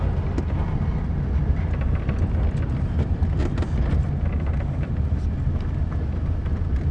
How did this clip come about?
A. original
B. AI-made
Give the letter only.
A